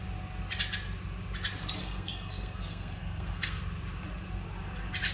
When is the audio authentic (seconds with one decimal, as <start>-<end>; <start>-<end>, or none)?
0.0-1.8; 3.6-5.1